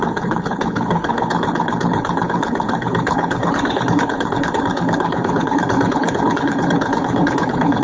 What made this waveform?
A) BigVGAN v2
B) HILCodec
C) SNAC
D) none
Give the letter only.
B